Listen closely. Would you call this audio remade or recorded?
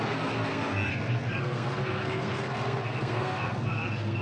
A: remade